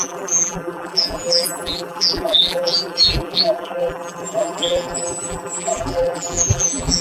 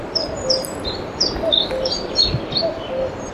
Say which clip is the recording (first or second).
second